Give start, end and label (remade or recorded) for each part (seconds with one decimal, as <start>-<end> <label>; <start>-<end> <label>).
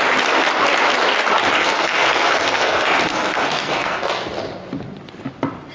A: 0.0-1.6 recorded; 1.6-4.3 remade; 4.3-5.7 recorded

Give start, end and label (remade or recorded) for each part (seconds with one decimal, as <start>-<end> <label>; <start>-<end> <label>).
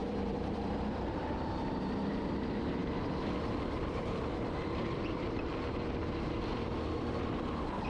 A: 0.0-2.1 remade; 2.1-2.8 recorded; 2.8-5.4 remade; 5.4-7.9 recorded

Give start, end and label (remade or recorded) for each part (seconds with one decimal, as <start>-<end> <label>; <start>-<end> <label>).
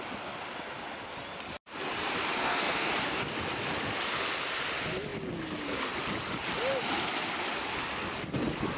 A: 0.0-2.4 recorded; 2.4-2.9 remade; 2.9-8.8 recorded